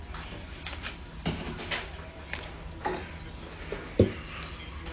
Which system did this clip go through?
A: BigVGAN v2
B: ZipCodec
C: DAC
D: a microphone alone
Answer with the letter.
D